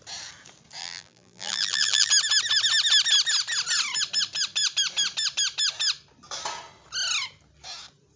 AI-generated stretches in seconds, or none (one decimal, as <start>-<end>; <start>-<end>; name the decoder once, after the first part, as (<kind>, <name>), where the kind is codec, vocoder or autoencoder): 0.8-2.1 (vocoder, BigVGAN v2)